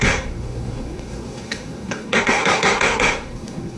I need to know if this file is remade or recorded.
remade